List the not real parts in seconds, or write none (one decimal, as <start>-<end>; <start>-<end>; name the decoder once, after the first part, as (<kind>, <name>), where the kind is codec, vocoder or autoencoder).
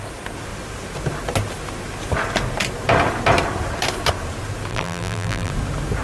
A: 4.7-5.5 (vocoder, BigVGAN v2)